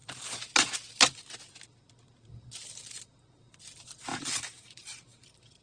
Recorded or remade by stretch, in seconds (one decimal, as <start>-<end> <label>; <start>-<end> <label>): 0.0-4.1 recorded; 4.1-5.6 remade